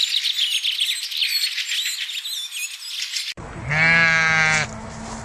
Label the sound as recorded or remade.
recorded